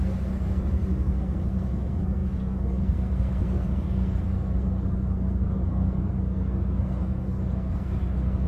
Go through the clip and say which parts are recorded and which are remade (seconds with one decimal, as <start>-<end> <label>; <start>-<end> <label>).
0.0-8.5 remade